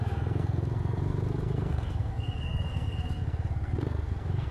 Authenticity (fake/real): fake